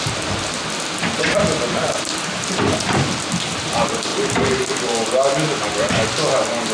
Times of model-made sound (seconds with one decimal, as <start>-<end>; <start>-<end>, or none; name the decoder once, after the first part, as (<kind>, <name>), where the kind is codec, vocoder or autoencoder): 1.0-3.0 (vocoder, BigVGAN v2)